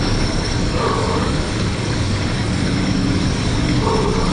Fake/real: fake